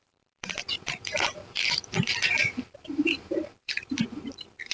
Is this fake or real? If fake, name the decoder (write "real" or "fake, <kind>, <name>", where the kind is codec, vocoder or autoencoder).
fake, vocoder, BigVGAN v2